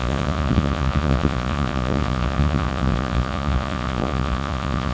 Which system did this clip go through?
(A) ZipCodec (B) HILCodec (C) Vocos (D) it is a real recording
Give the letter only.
C